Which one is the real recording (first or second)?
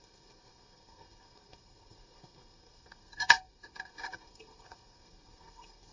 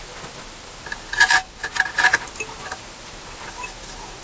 second